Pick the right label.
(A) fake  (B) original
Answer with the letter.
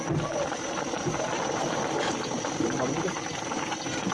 B